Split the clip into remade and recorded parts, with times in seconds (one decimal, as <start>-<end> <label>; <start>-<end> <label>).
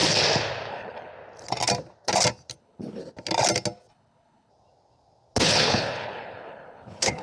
0.0-0.7 recorded; 0.7-1.1 remade; 1.1-2.6 recorded; 2.6-3.0 remade; 3.0-3.9 recorded; 3.9-4.5 remade; 4.5-5.4 recorded; 5.4-7.2 remade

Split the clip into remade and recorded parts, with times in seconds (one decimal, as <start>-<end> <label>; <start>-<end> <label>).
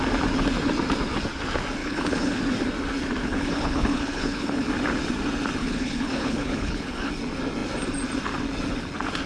0.0-1.8 recorded; 1.8-2.4 remade; 2.4-3.2 recorded; 3.2-4.7 remade; 4.7-5.6 recorded; 5.6-7.1 remade; 7.1-9.3 recorded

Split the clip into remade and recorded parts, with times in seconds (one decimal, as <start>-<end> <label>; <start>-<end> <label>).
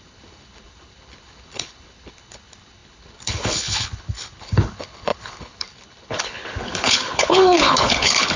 0.0-8.4 remade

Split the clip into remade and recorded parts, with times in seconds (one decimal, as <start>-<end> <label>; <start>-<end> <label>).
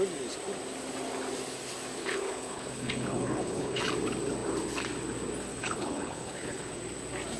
0.0-2.0 recorded; 2.0-3.8 remade; 3.8-5.5 recorded; 5.5-6.8 remade; 6.8-7.4 recorded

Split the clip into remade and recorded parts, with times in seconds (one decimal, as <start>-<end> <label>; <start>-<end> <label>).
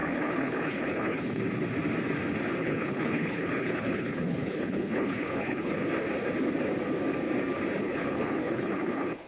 0.0-1.4 remade; 1.4-2.6 recorded; 2.6-5.9 remade; 5.9-7.8 recorded; 7.8-9.3 remade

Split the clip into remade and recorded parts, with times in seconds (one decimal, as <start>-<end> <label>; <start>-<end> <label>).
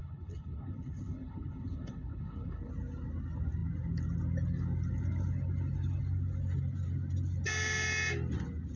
0.0-2.7 remade; 2.7-8.8 recorded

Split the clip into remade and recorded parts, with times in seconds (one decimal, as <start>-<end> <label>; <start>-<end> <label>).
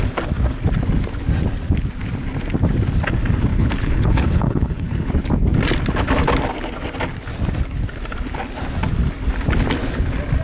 0.0-3.5 recorded; 3.5-5.1 remade; 5.1-10.4 recorded